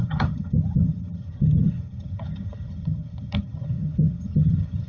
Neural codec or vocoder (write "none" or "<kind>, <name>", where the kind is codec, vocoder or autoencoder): vocoder, HiFi-GAN